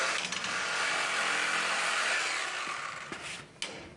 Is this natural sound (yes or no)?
yes